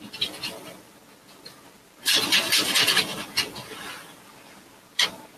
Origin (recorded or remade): recorded